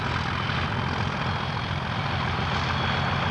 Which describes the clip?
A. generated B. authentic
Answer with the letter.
B